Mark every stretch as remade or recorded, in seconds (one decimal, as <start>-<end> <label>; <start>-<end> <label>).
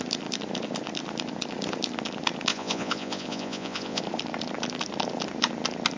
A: 0.0-2.5 recorded; 2.5-4.0 remade; 4.0-6.0 recorded